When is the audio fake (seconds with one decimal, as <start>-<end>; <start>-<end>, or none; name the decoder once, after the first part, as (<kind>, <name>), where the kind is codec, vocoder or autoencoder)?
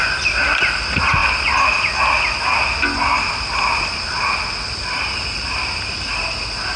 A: none